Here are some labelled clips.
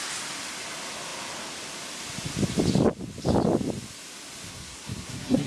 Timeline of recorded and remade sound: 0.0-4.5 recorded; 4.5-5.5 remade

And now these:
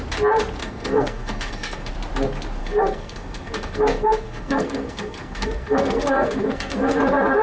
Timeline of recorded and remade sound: 0.0-0.6 recorded; 0.6-1.9 remade; 1.9-2.6 recorded; 2.6-7.0 remade; 7.0-7.4 recorded

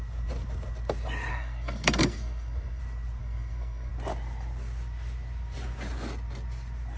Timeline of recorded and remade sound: 0.0-1.3 recorded; 1.3-2.8 remade; 2.8-3.2 recorded; 3.2-3.9 remade; 3.9-7.0 recorded